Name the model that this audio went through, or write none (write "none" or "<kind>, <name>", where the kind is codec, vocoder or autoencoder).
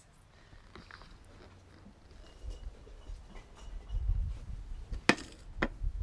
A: none